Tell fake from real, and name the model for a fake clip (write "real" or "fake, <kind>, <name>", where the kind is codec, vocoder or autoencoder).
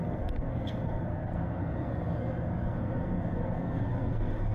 fake, codec, SNAC